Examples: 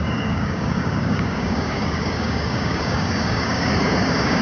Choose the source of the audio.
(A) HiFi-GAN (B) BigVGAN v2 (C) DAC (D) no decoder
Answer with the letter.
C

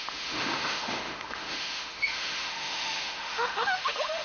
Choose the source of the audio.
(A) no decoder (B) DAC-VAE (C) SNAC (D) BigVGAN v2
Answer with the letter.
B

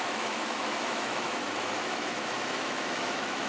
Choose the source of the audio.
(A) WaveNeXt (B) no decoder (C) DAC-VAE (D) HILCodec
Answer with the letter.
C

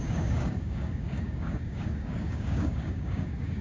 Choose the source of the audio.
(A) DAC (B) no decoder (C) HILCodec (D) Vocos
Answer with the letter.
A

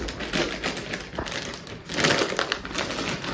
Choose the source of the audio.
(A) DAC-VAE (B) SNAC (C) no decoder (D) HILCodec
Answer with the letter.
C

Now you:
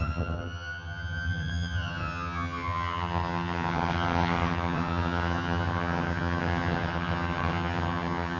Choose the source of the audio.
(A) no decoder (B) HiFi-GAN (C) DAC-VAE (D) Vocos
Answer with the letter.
B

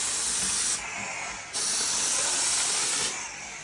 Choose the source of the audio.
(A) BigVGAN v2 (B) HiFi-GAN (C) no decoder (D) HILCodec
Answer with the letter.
C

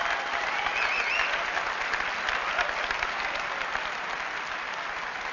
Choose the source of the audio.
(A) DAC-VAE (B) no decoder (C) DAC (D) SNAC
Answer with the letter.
B